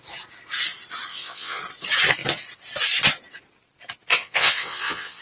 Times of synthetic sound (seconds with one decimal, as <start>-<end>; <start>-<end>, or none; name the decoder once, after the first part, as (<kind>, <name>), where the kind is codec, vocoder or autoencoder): 1.1-1.6 (vocoder, WaveNeXt); 4.1-5.2